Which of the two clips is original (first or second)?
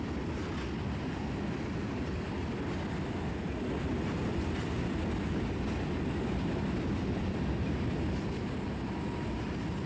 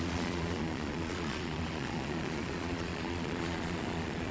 first